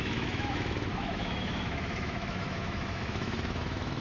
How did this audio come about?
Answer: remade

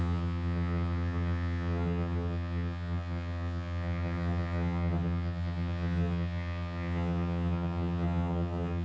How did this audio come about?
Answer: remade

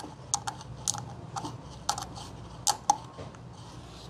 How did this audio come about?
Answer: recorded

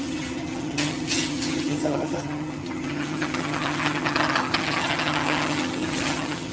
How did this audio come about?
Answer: remade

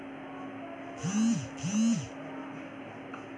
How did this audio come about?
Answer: recorded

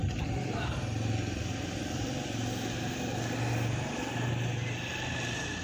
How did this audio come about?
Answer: recorded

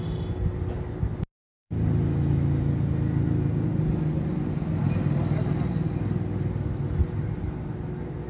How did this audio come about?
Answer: recorded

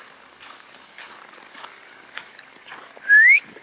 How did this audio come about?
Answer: remade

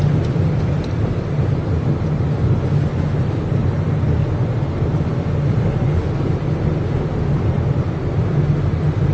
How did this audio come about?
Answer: recorded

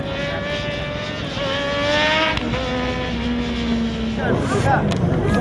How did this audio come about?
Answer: recorded